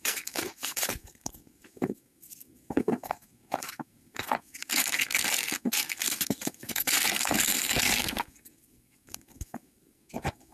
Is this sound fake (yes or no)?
yes